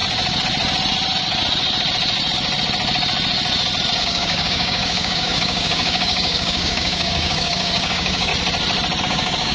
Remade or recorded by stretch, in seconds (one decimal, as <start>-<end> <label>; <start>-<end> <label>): 0.0-4.0 recorded; 4.0-8.3 remade; 8.3-9.0 recorded; 9.0-9.5 remade